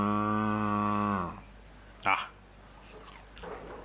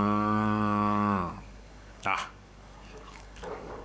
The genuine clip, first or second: first